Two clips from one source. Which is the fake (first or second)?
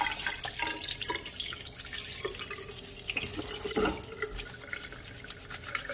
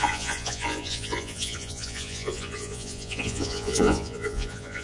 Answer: second